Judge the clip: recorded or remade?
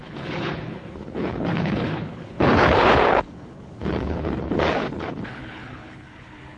remade